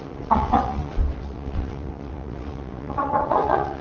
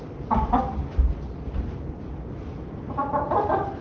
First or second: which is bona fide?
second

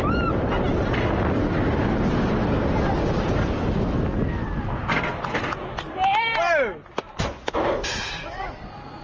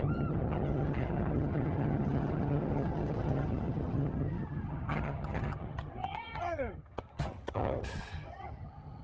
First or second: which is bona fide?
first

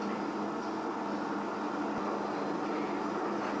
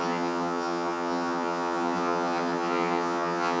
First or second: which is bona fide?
first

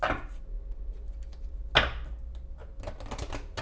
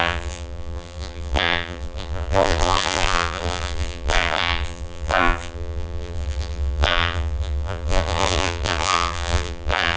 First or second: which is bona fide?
first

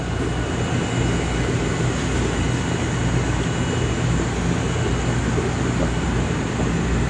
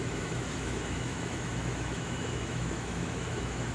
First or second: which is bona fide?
first